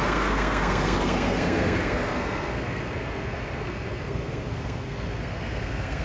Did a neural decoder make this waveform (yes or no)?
yes